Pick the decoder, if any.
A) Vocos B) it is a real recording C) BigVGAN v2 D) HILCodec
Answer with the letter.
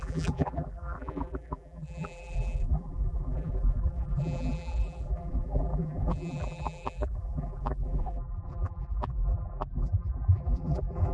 C